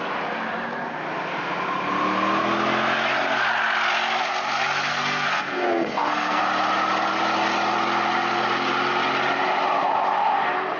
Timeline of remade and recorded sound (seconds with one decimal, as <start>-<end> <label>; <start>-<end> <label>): 0.0-4.9 recorded; 4.9-6.4 remade; 6.4-10.8 recorded

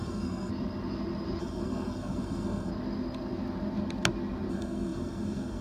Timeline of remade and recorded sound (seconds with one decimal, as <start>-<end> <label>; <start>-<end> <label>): 0.0-0.5 remade; 0.5-1.4 recorded; 1.4-2.7 remade; 2.7-4.5 recorded; 4.5-5.6 remade

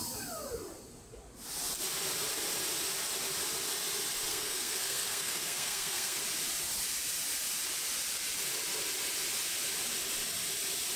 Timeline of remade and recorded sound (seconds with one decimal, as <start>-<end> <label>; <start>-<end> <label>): 0.0-4.3 recorded; 4.3-6.2 remade; 6.2-11.0 recorded

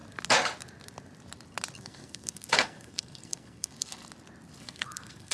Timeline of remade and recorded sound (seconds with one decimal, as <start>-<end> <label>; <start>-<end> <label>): 0.0-1.8 recorded; 1.8-4.0 remade; 4.0-4.6 recorded; 4.6-5.3 remade